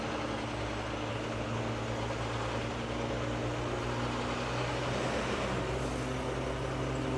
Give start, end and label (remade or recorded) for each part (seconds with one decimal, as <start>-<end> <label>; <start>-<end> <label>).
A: 0.0-1.1 recorded; 1.1-1.6 remade; 1.6-7.2 recorded